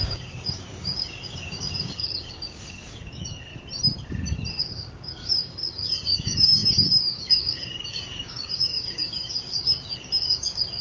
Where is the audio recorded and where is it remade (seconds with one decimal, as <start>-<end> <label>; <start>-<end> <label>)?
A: 0.0-3.5 remade; 3.5-4.6 recorded; 4.6-10.8 remade